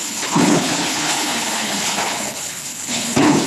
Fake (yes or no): yes